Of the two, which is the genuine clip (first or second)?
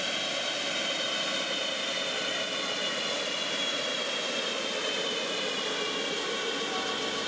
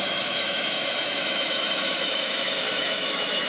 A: first